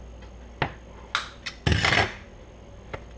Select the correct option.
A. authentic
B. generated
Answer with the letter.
A